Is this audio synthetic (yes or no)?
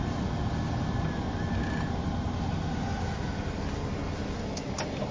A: no